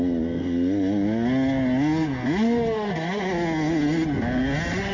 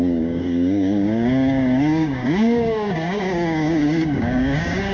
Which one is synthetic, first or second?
second